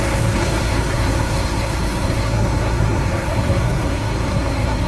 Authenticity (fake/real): fake